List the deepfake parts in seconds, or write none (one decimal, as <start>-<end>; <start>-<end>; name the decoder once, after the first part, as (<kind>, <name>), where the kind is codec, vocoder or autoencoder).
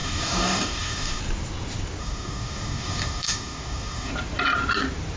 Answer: 0.0-1.2 (codec, DAC); 2.0-4.1